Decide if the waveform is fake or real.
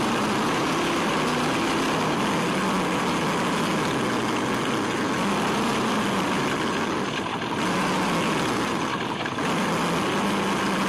real